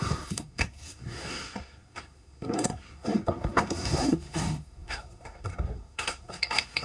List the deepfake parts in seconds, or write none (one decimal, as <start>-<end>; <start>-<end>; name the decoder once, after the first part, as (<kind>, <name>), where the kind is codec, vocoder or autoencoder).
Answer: 0.0-6.8 (codec, SNAC)